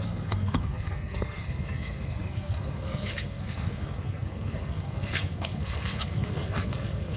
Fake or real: fake